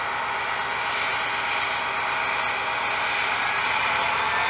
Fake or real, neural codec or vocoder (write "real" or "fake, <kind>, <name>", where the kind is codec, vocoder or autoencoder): real